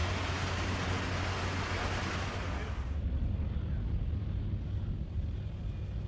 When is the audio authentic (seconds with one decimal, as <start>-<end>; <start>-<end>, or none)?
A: 0.0-6.1